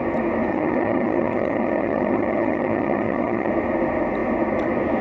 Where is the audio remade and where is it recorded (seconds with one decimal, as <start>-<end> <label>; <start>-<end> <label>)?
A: 0.0-0.5 recorded; 0.5-3.5 remade; 3.5-5.0 recorded